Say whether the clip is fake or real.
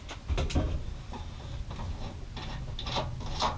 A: real